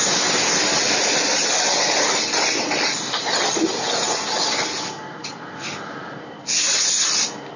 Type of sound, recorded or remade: recorded